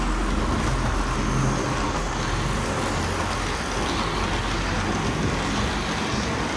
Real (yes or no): yes